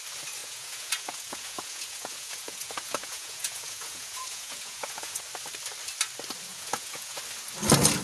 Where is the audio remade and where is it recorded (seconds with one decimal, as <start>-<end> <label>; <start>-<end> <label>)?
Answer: 0.0-0.4 recorded; 0.4-5.2 remade; 5.2-6.5 recorded; 6.5-7.2 remade; 7.2-8.0 recorded